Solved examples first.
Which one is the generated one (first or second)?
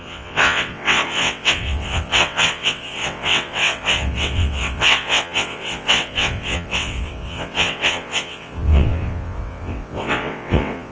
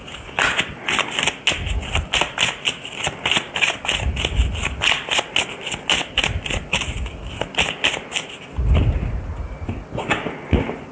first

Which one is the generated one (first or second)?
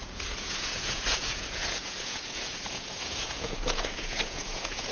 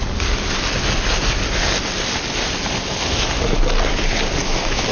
first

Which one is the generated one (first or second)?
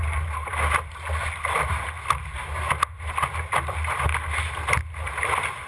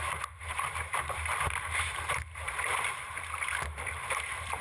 second